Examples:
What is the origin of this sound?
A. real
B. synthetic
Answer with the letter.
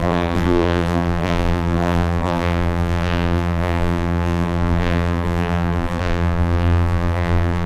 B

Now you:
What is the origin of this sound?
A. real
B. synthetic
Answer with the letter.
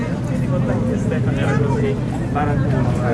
A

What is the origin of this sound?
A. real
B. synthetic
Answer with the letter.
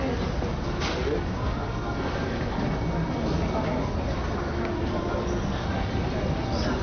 A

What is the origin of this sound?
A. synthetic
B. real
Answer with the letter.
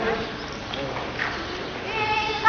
B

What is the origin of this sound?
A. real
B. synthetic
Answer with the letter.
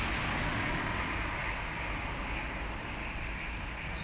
A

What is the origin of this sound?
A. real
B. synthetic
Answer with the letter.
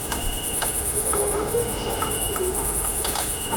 B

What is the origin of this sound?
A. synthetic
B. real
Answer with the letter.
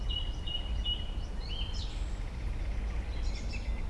B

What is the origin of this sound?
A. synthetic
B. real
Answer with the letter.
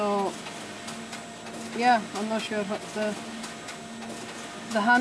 B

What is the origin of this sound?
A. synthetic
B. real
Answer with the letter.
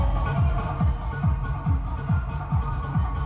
A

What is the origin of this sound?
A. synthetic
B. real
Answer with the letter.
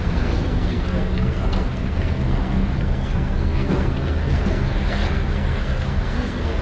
A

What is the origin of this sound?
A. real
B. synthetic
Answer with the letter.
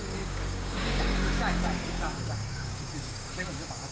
B